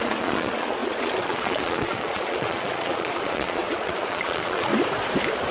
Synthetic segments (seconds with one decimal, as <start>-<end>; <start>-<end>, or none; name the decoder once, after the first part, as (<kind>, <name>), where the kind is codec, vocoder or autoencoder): 0.0-4.7 (vocoder, Vocos)